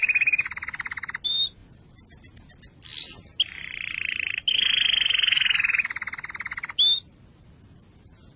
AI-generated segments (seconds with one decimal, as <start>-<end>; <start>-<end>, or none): none